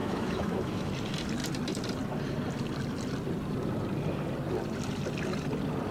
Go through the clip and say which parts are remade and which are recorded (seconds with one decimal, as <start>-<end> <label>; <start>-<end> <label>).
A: 0.0-0.9 remade; 0.9-5.9 recorded